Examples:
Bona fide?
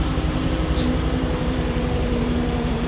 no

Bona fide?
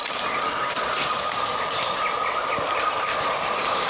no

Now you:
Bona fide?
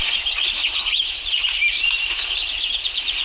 no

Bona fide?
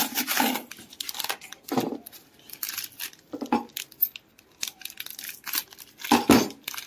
yes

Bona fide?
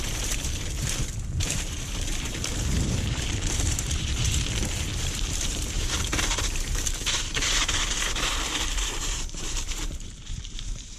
no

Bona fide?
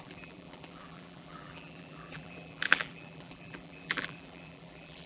no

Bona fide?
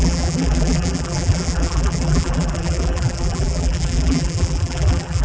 no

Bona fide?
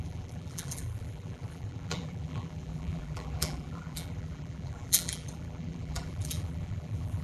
no